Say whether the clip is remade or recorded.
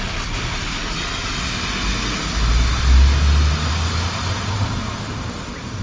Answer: recorded